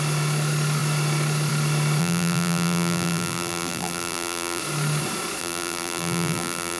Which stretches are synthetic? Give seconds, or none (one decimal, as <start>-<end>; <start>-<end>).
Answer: 2.0-4.6; 5.4-6.8